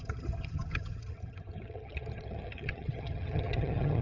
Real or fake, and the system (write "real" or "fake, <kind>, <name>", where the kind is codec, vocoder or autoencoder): fake, vocoder, HiFi-GAN